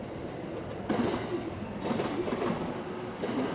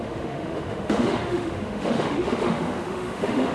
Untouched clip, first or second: first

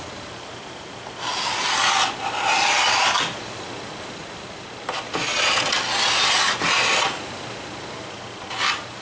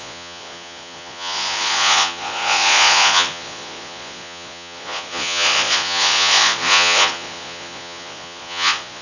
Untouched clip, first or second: first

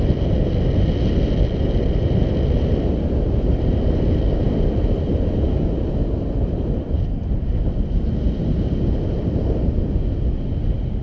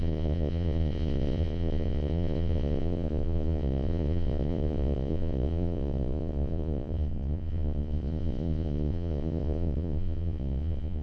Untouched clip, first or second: first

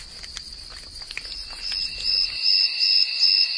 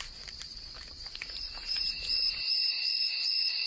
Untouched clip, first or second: first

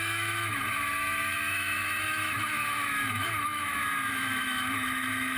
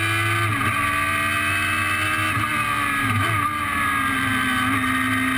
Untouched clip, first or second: second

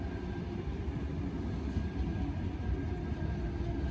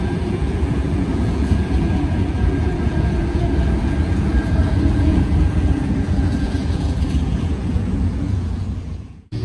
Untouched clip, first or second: first